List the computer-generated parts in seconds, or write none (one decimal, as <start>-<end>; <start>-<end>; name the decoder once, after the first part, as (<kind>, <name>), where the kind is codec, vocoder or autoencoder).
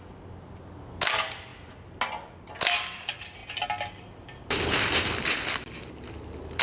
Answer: none